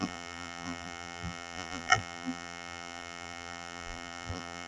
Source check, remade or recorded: remade